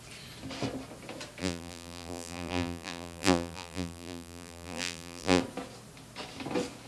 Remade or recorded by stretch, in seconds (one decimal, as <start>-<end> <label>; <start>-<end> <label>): 0.0-1.4 recorded; 1.4-5.4 remade; 5.4-6.9 recorded